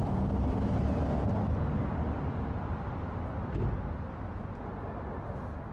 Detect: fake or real real